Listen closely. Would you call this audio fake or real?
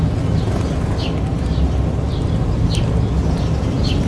real